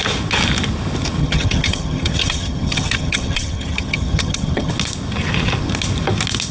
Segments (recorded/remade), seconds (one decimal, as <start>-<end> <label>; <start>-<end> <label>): 0.0-1.2 recorded; 1.2-4.7 remade; 4.7-6.5 recorded